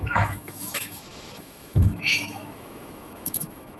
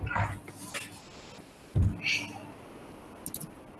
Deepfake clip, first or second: first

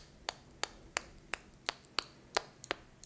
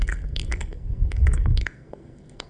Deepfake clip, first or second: second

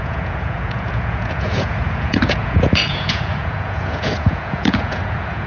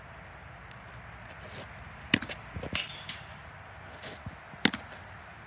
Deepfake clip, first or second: first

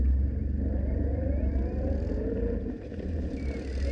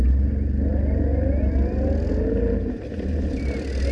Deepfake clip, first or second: first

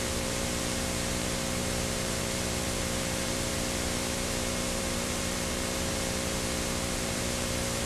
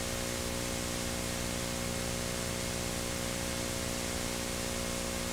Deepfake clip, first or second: first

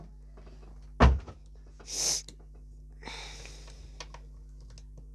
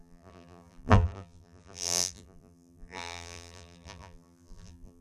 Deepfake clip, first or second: second